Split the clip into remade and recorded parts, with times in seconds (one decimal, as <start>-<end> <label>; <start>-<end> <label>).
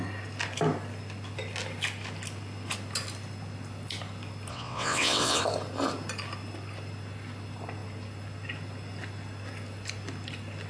0.0-4.5 recorded; 4.5-5.4 remade; 5.4-10.7 recorded